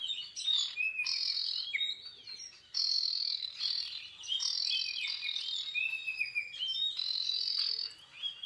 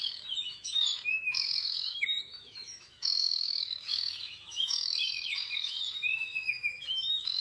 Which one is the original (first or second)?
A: first